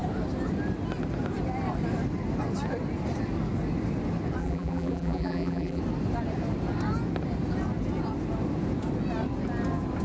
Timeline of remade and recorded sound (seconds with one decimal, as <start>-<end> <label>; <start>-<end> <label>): 0.0-4.4 recorded; 4.4-5.8 remade; 5.8-10.0 recorded